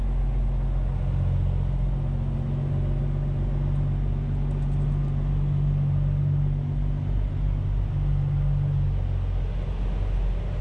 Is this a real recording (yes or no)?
yes